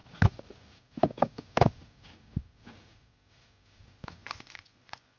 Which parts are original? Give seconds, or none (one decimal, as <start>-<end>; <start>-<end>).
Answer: 0.0-4.2